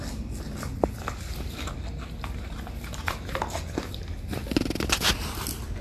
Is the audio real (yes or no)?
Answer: yes